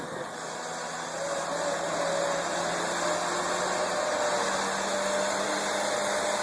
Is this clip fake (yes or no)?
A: no